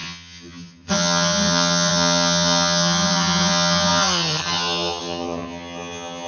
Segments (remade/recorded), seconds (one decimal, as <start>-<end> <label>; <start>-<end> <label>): 0.0-6.3 remade